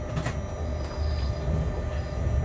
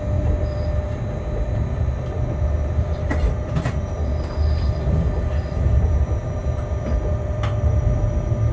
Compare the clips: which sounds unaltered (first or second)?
first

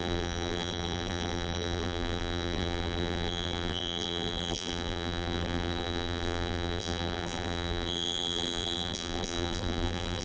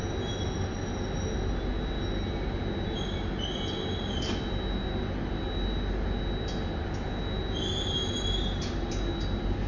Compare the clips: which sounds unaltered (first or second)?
second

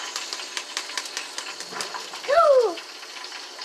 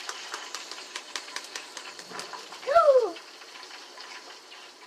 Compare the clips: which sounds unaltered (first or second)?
first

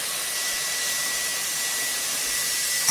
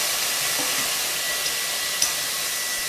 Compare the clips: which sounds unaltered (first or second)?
second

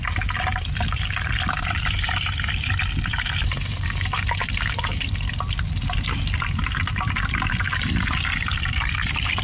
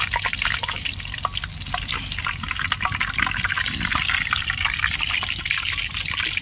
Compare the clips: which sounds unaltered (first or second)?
second